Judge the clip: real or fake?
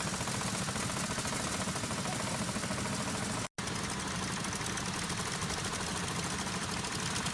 real